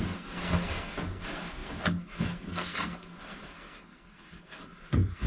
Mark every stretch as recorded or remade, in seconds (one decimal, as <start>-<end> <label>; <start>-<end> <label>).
0.0-5.3 remade